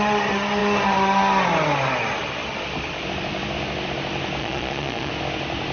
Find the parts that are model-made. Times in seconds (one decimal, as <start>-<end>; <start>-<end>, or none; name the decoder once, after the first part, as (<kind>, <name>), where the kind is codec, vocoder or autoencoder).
4.4-5.1 (vocoder, Vocos)